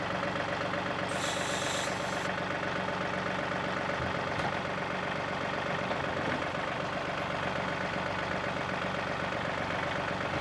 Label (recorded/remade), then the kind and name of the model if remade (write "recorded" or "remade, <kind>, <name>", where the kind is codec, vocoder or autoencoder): recorded